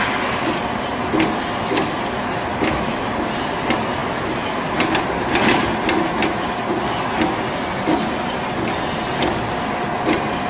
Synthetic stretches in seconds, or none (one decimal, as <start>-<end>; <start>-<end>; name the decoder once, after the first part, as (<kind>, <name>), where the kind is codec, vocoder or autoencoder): none